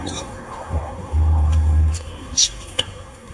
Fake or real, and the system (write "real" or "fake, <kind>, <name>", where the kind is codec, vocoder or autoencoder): fake, codec, SNAC